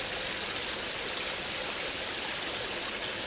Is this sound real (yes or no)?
yes